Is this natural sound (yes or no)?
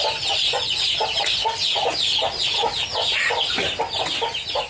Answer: yes